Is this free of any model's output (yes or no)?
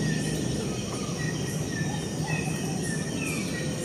yes